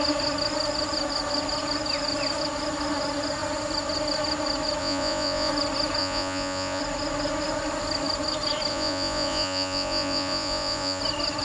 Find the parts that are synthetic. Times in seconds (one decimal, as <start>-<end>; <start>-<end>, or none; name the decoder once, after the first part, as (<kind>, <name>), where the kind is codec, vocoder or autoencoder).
4.8-5.5 (vocoder, Vocos); 6.0-6.8; 8.7-11.0